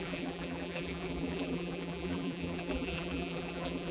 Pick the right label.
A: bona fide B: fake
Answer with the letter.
B